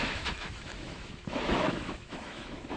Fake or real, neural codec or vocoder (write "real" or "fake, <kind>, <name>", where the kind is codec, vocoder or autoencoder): fake, autoencoder, DAC-VAE